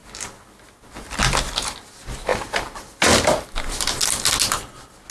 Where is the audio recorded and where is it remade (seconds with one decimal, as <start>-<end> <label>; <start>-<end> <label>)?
0.0-5.1 recorded

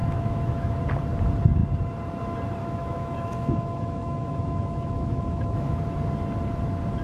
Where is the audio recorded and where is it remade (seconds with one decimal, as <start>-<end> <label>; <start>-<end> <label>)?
0.0-0.8 remade; 0.8-2.6 recorded; 2.6-5.8 remade; 5.8-7.0 recorded

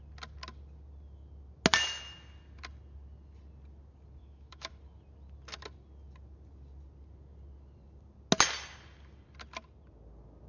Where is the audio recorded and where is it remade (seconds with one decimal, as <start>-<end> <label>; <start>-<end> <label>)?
0.0-4.2 recorded; 4.2-4.7 remade; 4.7-10.5 recorded

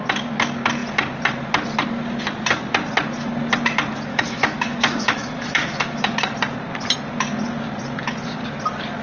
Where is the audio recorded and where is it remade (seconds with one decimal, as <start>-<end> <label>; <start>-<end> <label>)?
0.0-4.1 recorded; 4.1-6.1 remade; 6.1-9.0 recorded